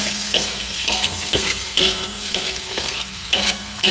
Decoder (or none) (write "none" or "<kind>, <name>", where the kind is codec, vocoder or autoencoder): codec, SNAC